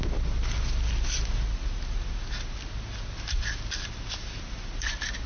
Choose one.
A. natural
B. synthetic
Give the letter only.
A